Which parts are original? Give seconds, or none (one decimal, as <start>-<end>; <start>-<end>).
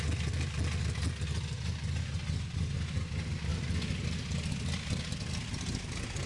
0.0-6.3